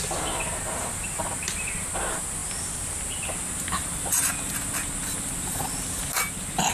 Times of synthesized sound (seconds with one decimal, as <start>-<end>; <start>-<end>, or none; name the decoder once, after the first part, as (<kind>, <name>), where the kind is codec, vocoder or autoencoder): none